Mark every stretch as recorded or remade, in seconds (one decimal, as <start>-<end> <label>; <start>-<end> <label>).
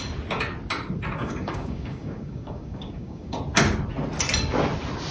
0.0-1.2 recorded; 1.2-3.4 remade; 3.4-5.1 recorded